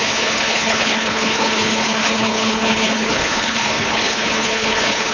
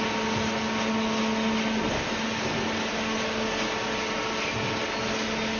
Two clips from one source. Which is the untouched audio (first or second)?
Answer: second